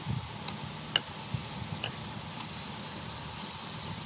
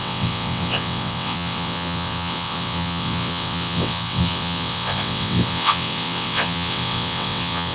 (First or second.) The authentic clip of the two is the first